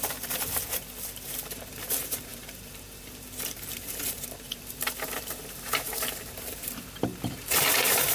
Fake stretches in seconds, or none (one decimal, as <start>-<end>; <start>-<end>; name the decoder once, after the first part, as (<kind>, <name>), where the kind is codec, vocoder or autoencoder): 0.0-8.1 (vocoder, BigVGAN v2)